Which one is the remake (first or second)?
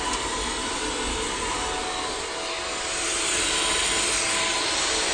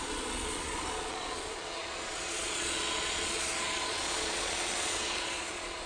second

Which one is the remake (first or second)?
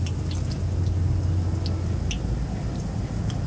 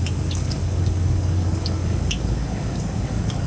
second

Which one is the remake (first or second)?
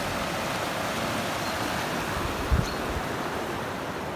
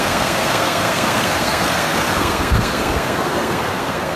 second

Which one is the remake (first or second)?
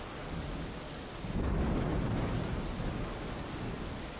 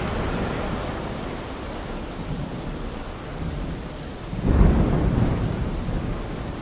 second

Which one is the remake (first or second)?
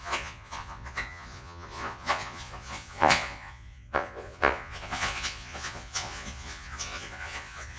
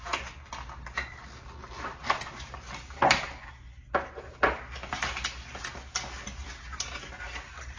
first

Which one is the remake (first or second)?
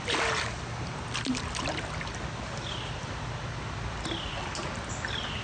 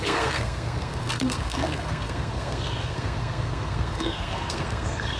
second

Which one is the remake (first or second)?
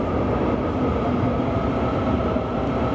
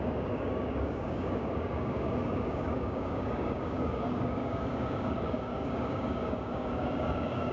second